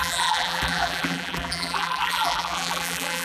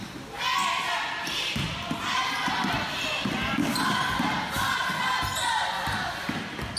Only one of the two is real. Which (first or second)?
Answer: second